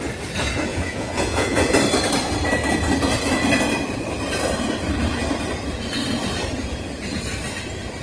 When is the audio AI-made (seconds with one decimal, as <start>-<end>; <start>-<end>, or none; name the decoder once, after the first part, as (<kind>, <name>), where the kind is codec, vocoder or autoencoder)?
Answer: 0.7-1.7 (vocoder, Vocos)